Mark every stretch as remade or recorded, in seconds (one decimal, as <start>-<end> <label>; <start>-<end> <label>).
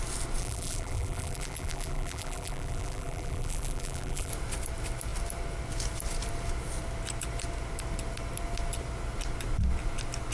0.0-0.4 recorded; 0.4-4.3 remade; 4.3-10.3 recorded